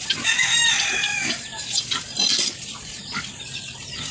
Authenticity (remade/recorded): recorded